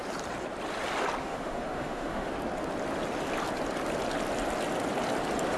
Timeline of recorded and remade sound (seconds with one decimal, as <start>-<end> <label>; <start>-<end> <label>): 0.0-1.2 recorded; 1.2-2.3 remade; 2.3-5.6 recorded